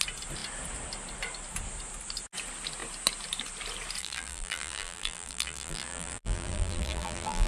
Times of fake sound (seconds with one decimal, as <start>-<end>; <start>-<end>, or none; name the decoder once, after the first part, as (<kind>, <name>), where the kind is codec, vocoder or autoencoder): 4.0-7.5 (vocoder, BigVGAN v2)